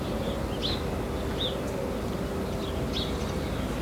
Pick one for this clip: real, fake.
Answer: real